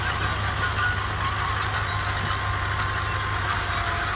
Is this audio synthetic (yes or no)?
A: no